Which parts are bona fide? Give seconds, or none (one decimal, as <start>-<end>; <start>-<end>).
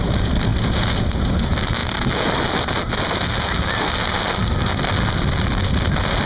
0.0-6.3